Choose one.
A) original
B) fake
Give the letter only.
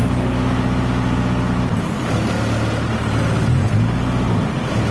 A